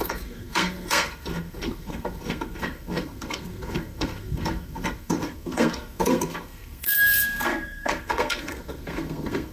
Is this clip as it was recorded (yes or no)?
no